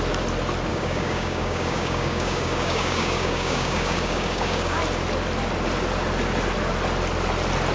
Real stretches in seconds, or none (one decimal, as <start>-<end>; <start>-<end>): 0.0-0.7; 4.8-7.7